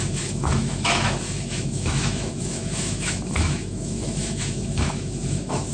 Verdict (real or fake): fake